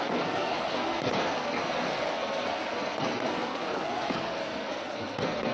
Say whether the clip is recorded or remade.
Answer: remade